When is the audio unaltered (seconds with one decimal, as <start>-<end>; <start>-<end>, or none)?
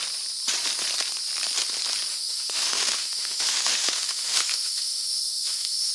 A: 0.0-2.1